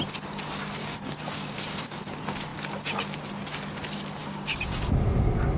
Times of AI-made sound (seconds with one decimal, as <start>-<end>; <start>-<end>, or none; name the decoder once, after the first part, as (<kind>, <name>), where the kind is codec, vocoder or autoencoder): 0.8-2.0 (codec, DAC); 4.2-4.8